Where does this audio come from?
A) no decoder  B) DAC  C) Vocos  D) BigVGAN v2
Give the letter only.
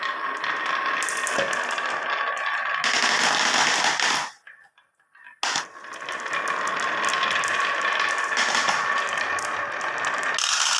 A